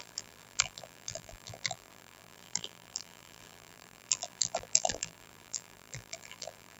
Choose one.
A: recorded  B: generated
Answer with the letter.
B